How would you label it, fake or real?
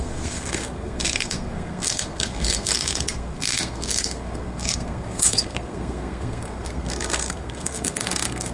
fake